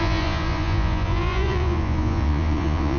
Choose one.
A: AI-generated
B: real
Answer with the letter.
A